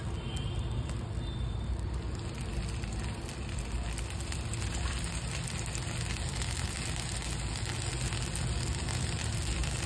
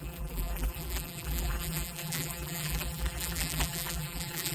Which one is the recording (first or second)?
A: first